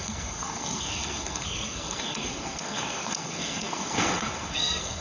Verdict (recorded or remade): remade